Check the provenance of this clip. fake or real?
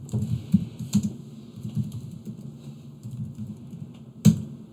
real